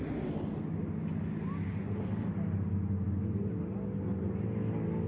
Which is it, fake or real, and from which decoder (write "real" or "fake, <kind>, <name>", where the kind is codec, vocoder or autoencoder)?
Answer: real